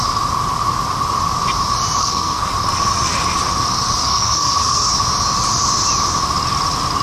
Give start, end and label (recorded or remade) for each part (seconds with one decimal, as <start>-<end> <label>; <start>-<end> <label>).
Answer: 0.0-2.0 recorded; 2.0-2.5 remade; 2.5-4.0 recorded; 4.0-4.9 remade; 4.9-7.0 recorded